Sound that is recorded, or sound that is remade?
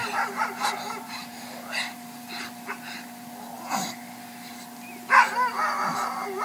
remade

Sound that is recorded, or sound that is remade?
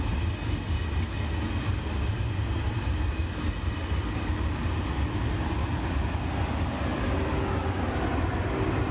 recorded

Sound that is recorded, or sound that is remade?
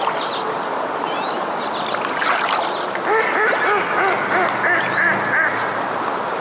recorded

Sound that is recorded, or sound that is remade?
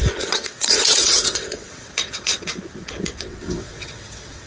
remade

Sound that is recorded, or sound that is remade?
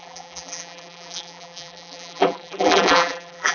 remade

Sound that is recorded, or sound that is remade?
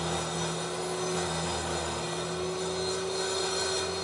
recorded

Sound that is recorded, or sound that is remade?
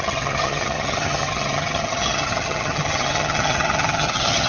remade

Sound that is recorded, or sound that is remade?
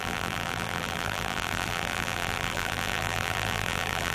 remade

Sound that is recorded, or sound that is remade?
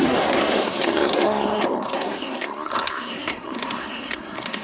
remade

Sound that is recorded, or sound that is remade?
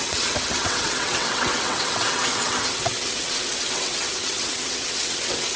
remade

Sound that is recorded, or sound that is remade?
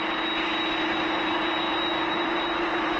recorded